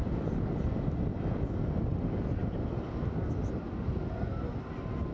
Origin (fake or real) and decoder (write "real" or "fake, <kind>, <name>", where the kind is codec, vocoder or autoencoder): real